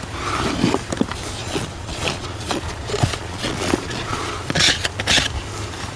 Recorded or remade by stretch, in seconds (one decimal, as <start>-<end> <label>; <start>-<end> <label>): 0.0-1.4 recorded; 1.4-5.0 remade; 5.0-6.0 recorded